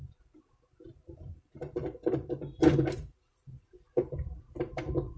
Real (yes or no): no